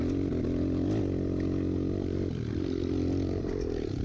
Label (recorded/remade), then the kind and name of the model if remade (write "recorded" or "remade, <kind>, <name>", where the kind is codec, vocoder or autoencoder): recorded